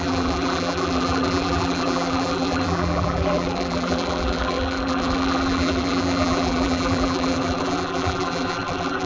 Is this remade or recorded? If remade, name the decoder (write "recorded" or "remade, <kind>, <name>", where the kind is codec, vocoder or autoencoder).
remade, vocoder, BigVGAN v2